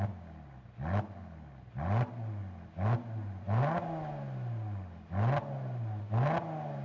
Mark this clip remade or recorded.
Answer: recorded